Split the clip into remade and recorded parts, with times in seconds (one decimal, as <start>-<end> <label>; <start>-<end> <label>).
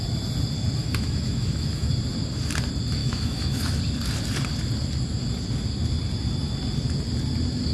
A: 0.0-0.8 recorded; 0.8-1.9 remade; 1.9-3.0 recorded; 3.0-3.8 remade; 3.8-7.7 recorded